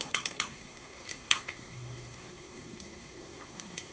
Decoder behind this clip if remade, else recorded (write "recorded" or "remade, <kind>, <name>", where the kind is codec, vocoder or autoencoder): remade, codec, SNAC